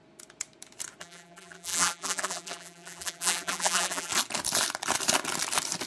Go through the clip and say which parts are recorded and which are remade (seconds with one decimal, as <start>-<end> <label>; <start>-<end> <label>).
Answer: 0.0-1.0 recorded; 1.0-4.1 remade; 4.1-5.9 recorded